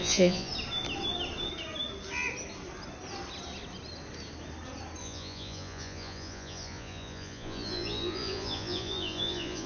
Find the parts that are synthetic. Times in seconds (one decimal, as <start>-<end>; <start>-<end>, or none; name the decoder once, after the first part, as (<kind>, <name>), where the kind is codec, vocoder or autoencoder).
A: 0.0-0.5 (vocoder, Vocos); 5.0-9.7